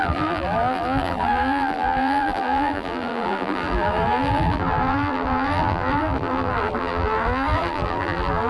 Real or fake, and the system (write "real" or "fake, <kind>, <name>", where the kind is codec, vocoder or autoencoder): fake, vocoder, BigVGAN v2